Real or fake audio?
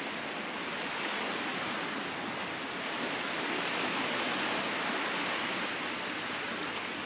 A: real